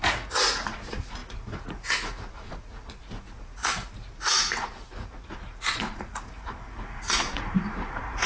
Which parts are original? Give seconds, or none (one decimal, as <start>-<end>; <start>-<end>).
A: none